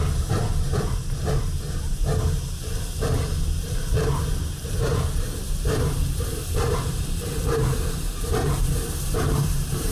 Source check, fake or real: fake